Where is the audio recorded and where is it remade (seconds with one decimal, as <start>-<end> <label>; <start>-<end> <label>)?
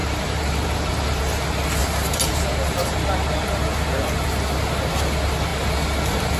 0.0-1.2 remade; 1.2-1.8 recorded; 1.8-3.1 remade; 3.1-6.4 recorded